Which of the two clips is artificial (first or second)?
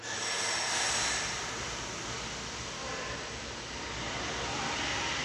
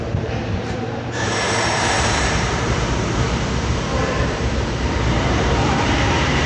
second